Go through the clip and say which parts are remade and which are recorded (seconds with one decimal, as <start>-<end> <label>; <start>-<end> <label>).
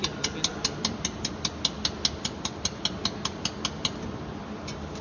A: 0.0-5.0 recorded